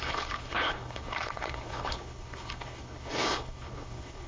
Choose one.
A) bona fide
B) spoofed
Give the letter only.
B